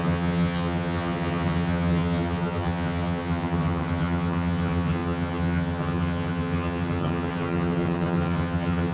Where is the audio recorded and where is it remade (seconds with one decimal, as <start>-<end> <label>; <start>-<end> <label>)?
0.0-8.9 remade